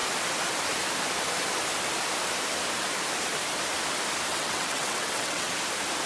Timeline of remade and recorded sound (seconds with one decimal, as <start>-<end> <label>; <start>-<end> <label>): 0.0-4.3 recorded; 4.3-5.5 remade; 5.5-6.1 recorded